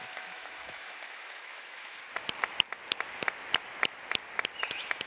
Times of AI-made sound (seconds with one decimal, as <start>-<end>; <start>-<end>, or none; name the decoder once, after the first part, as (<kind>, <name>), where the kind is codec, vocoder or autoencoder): 0.0-2.0 (autoencoder, DAC-VAE); 4.6-5.1